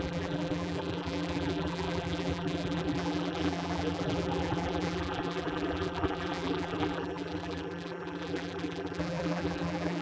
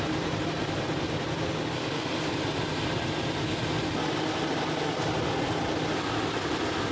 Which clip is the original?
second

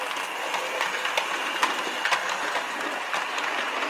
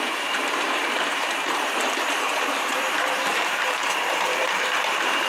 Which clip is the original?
first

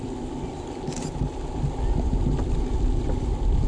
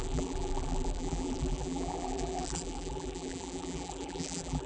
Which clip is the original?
first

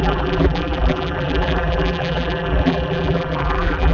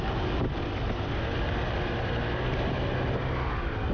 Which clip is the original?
second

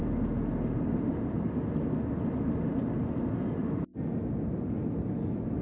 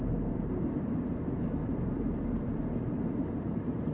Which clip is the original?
first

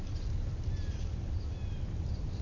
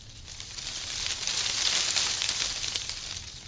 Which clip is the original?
first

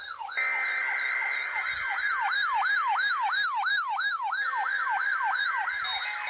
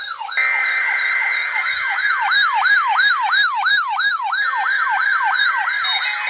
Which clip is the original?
first